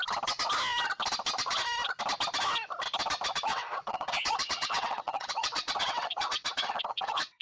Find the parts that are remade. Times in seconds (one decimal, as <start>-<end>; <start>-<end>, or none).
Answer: 3.5-7.4